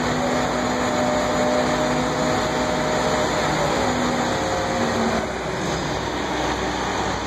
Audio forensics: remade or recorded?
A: recorded